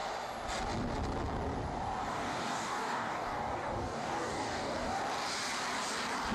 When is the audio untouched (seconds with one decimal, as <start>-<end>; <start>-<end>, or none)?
0.0-2.1; 5.0-6.3

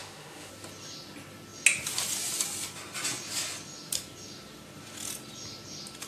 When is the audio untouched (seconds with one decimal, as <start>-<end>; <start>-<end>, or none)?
0.5-6.1